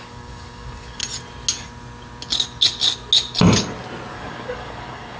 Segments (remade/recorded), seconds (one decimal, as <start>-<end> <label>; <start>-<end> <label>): 0.0-1.0 remade; 1.0-4.1 recorded; 4.1-5.2 remade